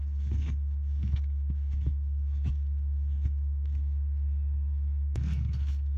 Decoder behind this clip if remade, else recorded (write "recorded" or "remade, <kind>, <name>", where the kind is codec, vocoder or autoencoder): remade, codec, SNAC